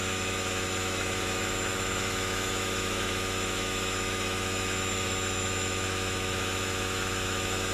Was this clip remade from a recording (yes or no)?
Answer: yes